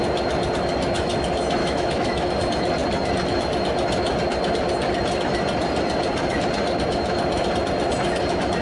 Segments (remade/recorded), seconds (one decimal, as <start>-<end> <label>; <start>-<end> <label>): 0.0-1.6 recorded; 1.6-2.3 remade; 2.3-8.6 recorded